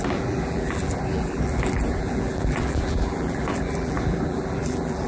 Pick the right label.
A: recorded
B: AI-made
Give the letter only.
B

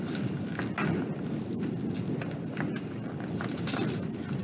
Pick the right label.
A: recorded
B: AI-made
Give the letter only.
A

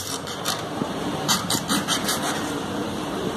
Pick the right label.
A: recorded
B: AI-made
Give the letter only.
B